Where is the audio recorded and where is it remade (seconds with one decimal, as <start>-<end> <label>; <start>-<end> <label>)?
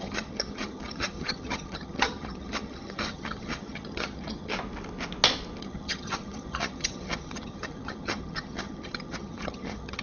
0.0-4.5 remade; 4.5-5.6 recorded; 5.6-10.0 remade